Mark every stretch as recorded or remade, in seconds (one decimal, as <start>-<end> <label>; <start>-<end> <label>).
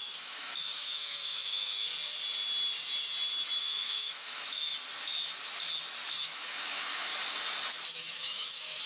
0.0-1.9 remade; 1.9-3.6 recorded; 3.6-4.7 remade; 4.7-6.1 recorded; 6.1-7.1 remade; 7.1-7.9 recorded; 7.9-8.9 remade